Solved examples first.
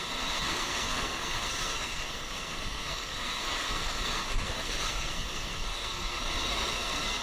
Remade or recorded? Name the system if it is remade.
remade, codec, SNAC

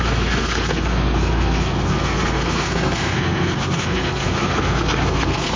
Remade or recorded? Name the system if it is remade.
remade, codec, SNAC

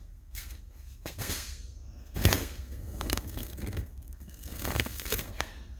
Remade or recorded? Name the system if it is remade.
remade, codec, SNAC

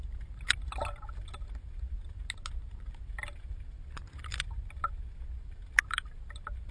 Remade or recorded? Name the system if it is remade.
recorded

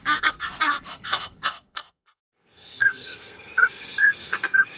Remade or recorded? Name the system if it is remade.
remade, codec, SNAC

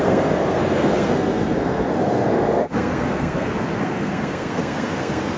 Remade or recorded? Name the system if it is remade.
remade, codec, SNAC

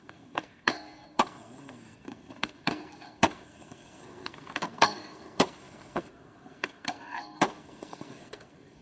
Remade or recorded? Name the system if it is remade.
remade, codec, SNAC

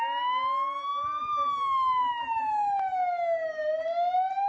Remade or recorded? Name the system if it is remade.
recorded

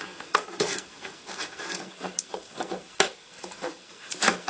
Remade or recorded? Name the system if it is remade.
remade, codec, SNAC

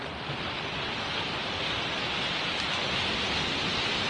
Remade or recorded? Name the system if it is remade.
recorded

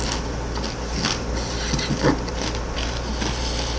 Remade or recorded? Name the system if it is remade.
recorded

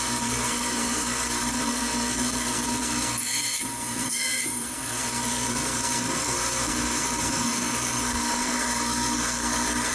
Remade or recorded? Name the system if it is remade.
remade, codec, SNAC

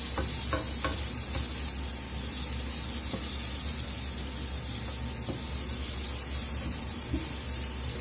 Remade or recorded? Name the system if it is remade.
recorded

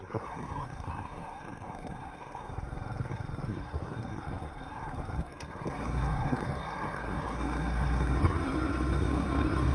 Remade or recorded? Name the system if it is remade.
remade, codec, SNAC